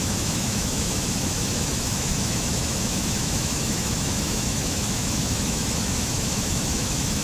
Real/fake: fake